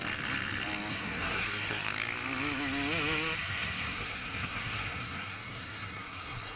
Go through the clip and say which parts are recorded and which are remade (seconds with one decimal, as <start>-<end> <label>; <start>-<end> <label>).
0.0-0.9 recorded; 0.9-1.9 remade; 1.9-3.4 recorded; 3.4-6.6 remade